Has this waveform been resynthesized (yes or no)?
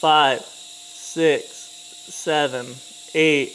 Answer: yes